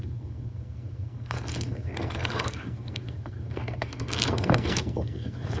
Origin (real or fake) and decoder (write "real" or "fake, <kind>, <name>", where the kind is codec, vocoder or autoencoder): fake, codec, SNAC